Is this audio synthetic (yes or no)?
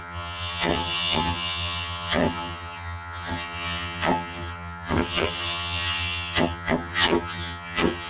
yes